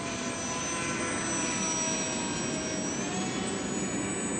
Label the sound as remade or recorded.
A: recorded